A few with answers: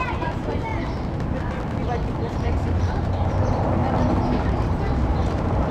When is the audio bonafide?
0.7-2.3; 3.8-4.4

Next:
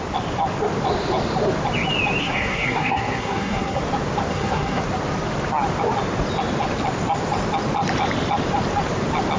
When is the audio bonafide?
0.0-2.2; 3.8-4.3; 4.8-9.4